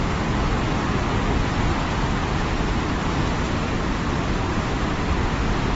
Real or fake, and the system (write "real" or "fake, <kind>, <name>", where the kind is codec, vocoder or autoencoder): real